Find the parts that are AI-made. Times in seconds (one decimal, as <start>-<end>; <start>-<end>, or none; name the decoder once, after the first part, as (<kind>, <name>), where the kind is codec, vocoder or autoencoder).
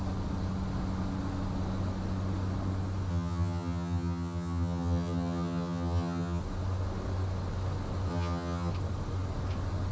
3.1-6.4 (vocoder, HiFi-GAN); 8.1-8.7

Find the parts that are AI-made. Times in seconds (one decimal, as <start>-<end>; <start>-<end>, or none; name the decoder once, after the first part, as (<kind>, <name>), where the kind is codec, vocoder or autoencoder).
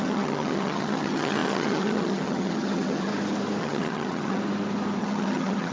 0.0-3.1 (vocoder, HiFi-GAN); 3.6-4.4; 5.0-5.7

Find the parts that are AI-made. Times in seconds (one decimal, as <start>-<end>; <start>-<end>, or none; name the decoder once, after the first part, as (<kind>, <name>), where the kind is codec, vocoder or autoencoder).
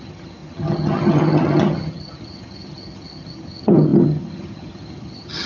0.0-5.5 (vocoder, HiFi-GAN)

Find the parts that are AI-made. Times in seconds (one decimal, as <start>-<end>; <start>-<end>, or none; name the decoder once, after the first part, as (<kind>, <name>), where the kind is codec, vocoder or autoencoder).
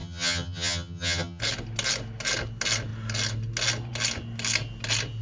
0.0-1.4 (vocoder, HiFi-GAN)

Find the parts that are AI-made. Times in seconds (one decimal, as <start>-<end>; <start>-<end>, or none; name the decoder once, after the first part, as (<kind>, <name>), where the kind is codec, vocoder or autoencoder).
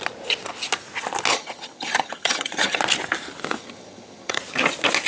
1.3-2.8 (vocoder, HiFi-GAN); 3.6-4.4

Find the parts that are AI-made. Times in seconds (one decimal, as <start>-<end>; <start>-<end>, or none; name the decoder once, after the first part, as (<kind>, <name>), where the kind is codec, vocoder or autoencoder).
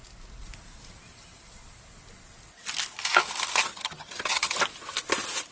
3.7-4.6 (vocoder, HiFi-GAN)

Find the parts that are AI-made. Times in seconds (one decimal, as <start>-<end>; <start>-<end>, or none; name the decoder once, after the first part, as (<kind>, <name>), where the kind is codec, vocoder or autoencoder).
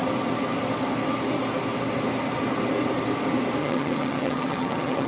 3.6-5.1 (vocoder, HiFi-GAN)